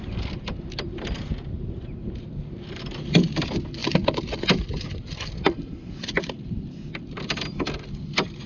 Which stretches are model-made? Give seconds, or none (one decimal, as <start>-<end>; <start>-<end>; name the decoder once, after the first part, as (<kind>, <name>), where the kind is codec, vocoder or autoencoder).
0.0-3.8 (vocoder, BigVGAN v2); 4.8-8.5